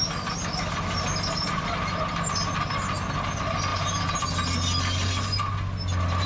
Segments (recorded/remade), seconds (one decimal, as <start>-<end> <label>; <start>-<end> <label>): 0.0-3.7 recorded; 3.7-4.2 remade; 4.2-6.3 recorded